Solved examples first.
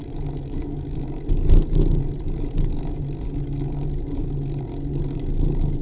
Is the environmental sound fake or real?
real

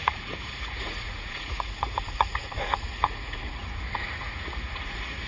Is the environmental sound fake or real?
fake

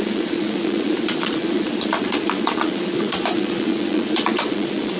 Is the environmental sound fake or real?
fake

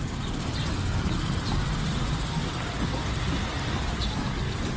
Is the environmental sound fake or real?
real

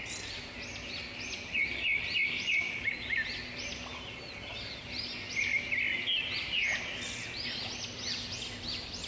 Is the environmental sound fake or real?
real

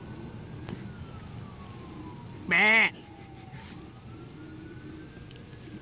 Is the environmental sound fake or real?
real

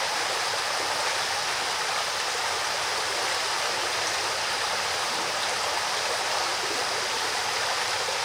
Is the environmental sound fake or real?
real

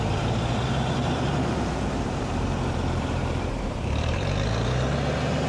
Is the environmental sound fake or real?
fake